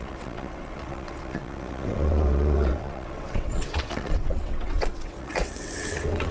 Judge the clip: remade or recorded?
remade